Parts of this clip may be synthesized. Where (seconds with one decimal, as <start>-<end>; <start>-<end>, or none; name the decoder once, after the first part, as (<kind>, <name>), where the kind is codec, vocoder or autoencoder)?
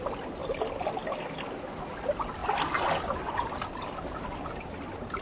none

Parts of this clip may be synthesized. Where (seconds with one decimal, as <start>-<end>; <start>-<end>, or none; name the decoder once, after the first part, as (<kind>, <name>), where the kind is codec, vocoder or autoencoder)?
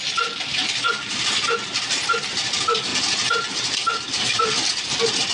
none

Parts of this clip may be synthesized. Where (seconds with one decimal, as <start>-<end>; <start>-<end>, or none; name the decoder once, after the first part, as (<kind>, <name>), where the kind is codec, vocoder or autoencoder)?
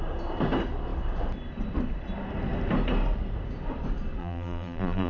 4.2-5.1 (vocoder, BigVGAN v2)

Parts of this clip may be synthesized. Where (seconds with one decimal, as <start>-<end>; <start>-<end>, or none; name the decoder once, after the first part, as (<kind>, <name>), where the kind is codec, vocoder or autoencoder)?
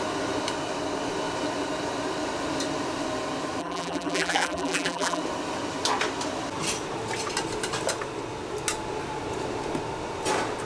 3.6-5.2 (vocoder, BigVGAN v2)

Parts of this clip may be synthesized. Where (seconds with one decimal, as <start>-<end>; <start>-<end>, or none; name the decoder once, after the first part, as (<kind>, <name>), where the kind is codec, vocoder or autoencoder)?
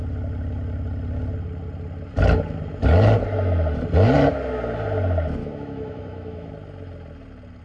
5.4-6.5 (autoencoder, DAC-VAE)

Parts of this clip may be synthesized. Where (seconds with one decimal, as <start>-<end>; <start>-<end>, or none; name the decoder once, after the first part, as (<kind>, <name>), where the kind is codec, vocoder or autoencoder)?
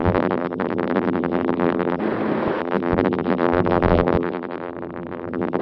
0.0-2.0 (vocoder, BigVGAN v2); 2.6-5.6